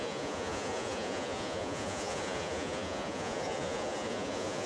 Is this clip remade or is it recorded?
remade